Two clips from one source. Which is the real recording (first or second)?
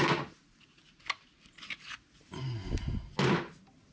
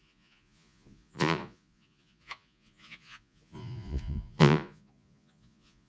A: first